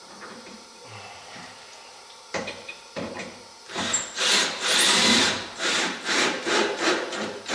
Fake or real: fake